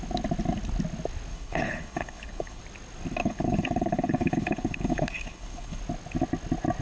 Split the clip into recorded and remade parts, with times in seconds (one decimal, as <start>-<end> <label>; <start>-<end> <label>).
0.0-1.3 recorded; 1.3-2.6 remade; 2.6-3.2 recorded; 3.2-5.8 remade; 5.8-6.8 recorded